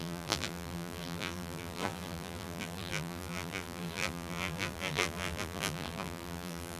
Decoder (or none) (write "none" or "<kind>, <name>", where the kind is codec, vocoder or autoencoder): vocoder, BigVGAN v2